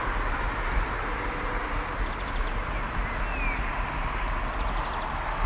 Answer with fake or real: real